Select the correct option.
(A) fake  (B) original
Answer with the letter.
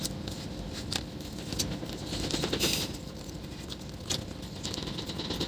B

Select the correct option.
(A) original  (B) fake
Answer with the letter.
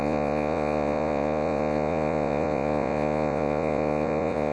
B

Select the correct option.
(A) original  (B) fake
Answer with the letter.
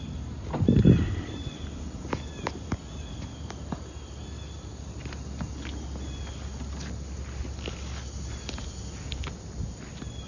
A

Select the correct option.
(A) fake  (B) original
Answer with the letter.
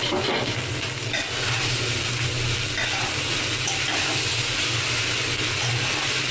B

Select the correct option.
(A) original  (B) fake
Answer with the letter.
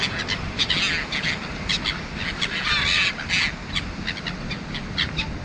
A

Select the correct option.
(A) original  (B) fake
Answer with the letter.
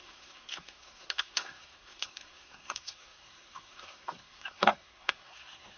B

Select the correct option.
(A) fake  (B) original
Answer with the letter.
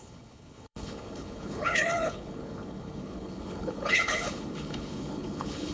A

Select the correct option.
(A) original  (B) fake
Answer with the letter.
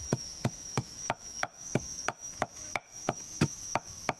B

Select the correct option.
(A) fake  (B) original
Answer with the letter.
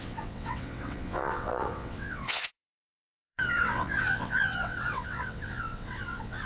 A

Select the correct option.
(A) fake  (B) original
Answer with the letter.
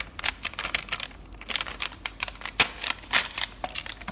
B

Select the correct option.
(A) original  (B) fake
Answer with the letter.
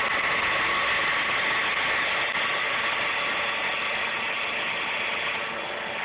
A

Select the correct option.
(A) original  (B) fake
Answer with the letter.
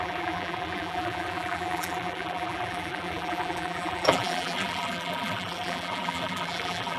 B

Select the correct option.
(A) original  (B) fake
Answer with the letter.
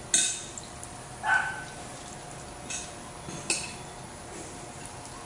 A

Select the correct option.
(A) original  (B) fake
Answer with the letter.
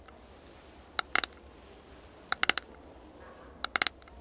A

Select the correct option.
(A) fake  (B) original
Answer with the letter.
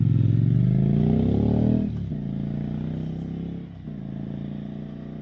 B